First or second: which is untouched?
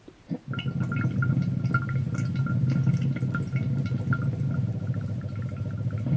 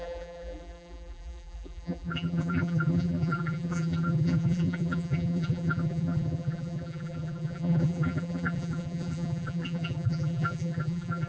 first